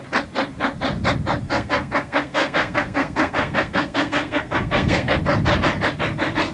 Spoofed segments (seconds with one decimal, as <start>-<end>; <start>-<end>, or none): 1.4-5.2